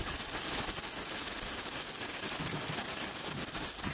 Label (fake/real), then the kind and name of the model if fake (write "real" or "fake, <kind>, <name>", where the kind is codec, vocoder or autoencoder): real